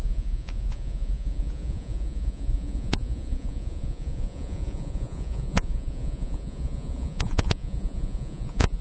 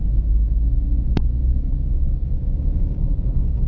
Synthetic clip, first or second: first